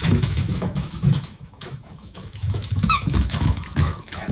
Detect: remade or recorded remade